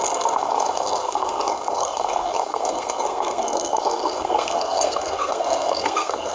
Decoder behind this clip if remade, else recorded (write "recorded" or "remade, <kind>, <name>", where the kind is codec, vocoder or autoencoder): remade, codec, SNAC